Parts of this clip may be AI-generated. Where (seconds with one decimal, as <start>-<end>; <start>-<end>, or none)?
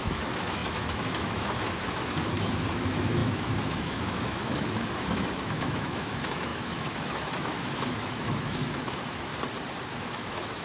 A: 0.0-9.3; 9.9-10.6